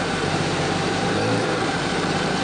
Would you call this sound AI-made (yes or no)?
yes